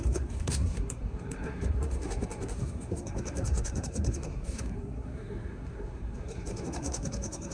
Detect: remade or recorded remade